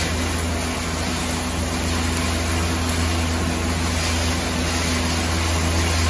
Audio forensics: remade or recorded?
recorded